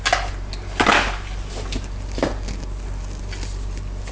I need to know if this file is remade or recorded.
recorded